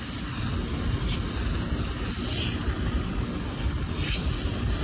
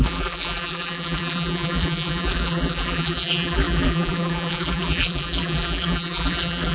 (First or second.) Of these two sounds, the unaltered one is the first